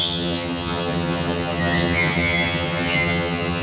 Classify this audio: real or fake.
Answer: fake